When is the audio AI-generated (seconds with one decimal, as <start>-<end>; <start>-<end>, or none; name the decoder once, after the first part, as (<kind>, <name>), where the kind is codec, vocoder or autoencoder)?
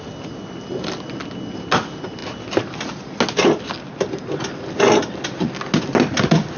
none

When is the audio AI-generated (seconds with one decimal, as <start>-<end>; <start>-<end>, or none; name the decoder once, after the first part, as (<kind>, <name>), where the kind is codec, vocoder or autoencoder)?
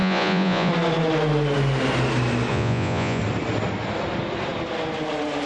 0.0-0.7 (vocoder, Vocos); 2.5-3.2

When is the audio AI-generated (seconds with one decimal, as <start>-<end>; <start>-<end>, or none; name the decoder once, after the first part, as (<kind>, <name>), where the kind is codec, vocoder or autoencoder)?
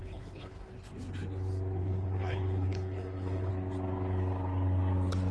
0.0-0.7 (codec, HILCodec); 1.8-3.5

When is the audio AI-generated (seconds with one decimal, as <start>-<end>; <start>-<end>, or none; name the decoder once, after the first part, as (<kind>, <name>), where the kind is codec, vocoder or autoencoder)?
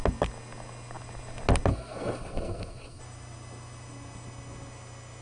1.7-3.0 (codec, SNAC)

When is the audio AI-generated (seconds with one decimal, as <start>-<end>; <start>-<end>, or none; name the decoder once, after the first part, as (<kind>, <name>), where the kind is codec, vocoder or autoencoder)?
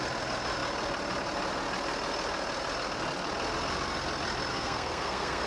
4.5-5.5 (codec, SNAC)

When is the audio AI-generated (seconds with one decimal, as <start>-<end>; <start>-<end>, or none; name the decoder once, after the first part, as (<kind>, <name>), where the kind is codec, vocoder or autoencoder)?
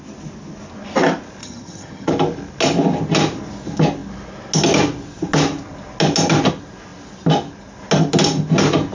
1.4-2.1 (vocoder, HiFi-GAN)